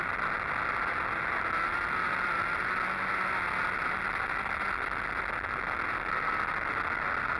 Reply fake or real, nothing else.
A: real